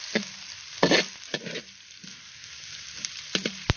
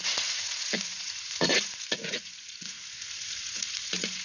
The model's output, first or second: second